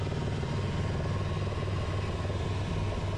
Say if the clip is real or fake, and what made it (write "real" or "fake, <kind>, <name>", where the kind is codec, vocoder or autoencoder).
real